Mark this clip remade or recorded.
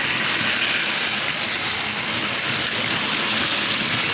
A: recorded